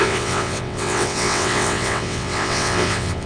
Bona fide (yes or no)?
no